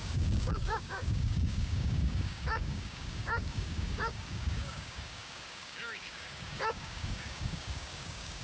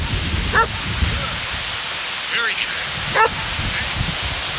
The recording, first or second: second